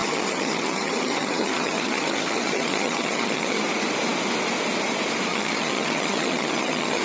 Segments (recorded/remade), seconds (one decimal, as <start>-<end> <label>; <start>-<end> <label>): 0.0-3.6 remade; 3.6-5.3 recorded; 5.3-7.0 remade